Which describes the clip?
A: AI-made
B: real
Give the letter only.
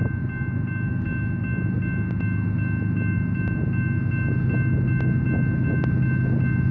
B